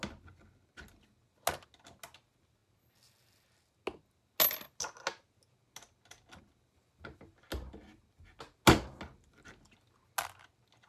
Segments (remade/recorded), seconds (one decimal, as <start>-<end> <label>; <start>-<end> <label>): 0.0-10.9 recorded